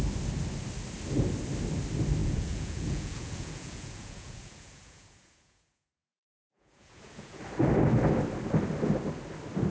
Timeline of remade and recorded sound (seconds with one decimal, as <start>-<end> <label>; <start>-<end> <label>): 0.0-2.2 recorded; 2.2-7.4 remade; 7.4-9.7 recorded